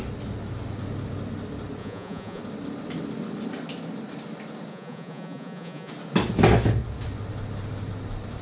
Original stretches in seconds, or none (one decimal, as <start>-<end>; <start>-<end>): 0.0-1.8; 2.4-4.7; 5.9-8.4